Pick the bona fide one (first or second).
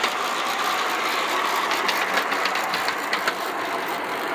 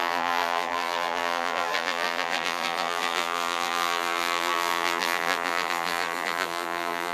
first